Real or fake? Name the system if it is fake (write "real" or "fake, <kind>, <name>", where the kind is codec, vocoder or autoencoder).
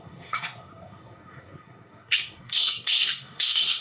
fake, codec, SNAC